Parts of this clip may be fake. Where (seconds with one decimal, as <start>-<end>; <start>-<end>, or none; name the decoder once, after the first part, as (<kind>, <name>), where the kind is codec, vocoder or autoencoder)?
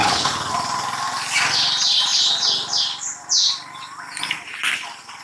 0.0-0.5 (codec, HILCodec)